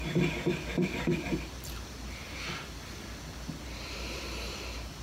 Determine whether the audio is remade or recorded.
recorded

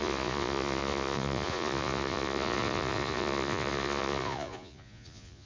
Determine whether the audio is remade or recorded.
remade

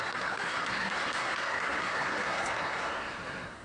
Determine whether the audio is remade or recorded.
remade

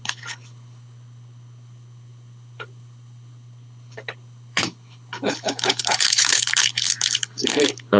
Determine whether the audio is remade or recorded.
remade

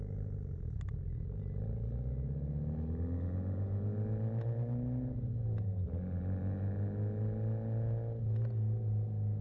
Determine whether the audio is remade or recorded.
recorded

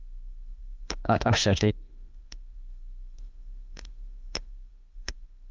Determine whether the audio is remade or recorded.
remade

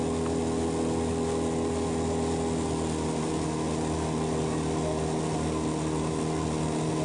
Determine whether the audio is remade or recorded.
recorded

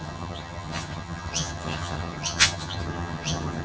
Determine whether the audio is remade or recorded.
remade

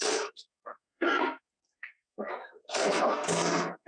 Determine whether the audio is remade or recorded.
remade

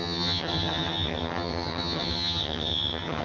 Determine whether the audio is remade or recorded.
remade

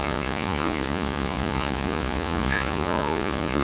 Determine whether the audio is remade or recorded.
remade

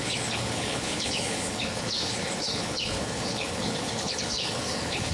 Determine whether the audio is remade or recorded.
remade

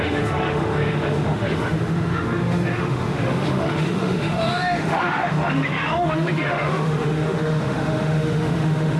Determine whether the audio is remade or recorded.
remade